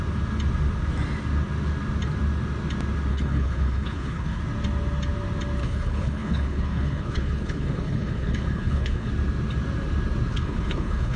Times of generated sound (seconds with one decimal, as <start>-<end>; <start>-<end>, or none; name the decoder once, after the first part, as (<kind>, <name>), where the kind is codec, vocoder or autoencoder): 3.1-4.4 (codec, HILCodec); 5.6-9.1; 10.3-11.2